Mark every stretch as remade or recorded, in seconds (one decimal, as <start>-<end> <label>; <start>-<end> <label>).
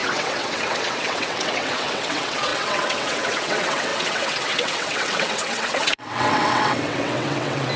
0.0-7.8 remade